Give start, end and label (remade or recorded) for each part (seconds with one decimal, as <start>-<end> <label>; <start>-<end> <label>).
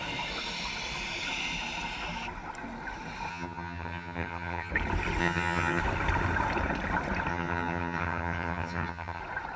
0.0-3.3 recorded; 3.3-4.7 remade; 4.7-5.2 recorded; 5.2-5.8 remade; 5.8-7.3 recorded; 7.3-9.2 remade; 9.2-9.6 recorded